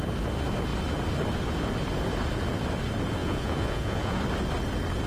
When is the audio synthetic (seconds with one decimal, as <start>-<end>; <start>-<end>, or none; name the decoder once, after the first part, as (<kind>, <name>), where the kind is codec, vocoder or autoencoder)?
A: 3.2-4.2 (vocoder, Vocos)